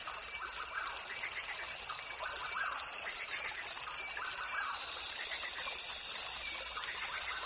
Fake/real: real